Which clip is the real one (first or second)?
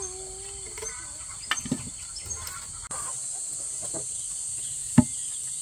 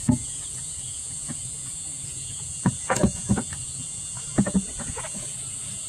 first